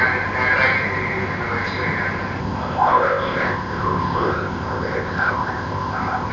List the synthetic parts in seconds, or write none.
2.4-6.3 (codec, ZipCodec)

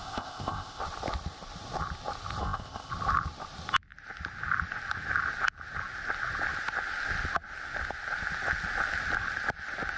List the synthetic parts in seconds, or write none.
0.0-0.8 (codec, ZipCodec); 2.4-2.9